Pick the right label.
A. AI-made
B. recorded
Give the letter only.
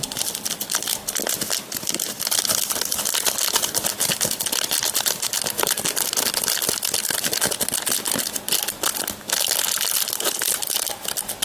B